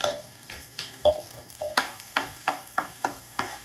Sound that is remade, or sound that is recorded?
remade